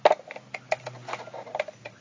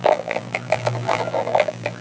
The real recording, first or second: first